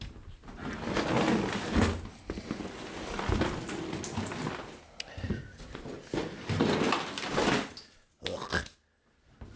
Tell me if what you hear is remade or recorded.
recorded